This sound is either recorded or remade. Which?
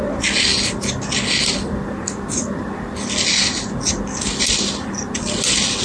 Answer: recorded